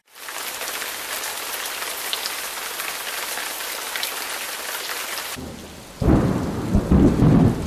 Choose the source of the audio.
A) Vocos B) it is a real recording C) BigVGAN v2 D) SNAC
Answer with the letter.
B